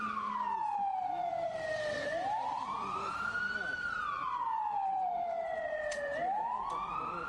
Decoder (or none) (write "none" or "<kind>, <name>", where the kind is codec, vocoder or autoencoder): vocoder, BigVGAN v2